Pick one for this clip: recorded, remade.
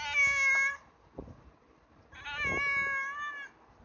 recorded